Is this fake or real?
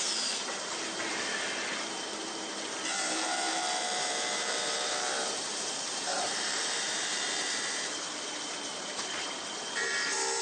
fake